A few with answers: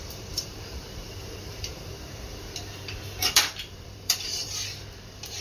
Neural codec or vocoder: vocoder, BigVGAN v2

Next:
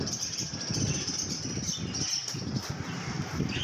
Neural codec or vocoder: none